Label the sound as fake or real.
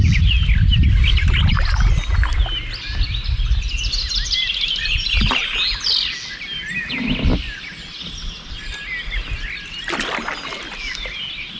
real